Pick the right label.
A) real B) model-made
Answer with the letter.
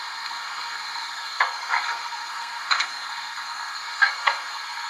B